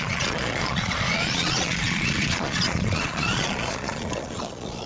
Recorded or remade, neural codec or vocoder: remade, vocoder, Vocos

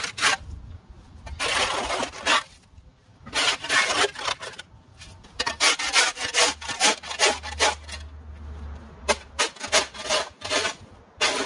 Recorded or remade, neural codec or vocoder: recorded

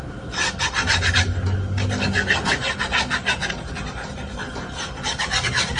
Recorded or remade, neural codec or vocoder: recorded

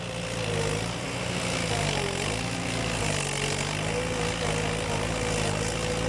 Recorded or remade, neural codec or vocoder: recorded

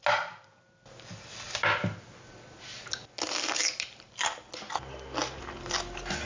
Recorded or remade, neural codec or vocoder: recorded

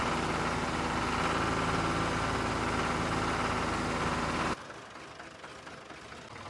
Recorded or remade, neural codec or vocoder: recorded